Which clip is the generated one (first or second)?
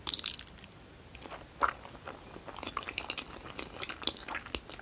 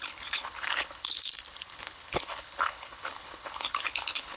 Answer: second